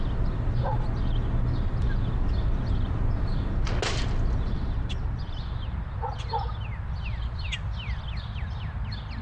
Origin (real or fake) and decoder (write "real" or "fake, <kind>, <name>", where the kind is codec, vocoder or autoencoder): real